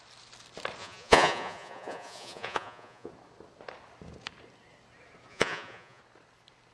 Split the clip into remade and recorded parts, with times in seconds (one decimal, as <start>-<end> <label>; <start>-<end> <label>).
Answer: 0.0-0.8 recorded; 0.8-3.1 remade; 3.1-5.3 recorded; 5.3-6.0 remade; 6.0-6.7 recorded